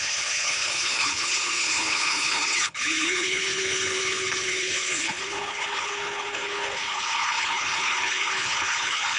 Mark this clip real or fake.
fake